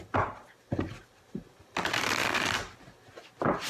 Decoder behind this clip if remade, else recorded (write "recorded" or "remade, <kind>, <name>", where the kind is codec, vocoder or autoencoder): recorded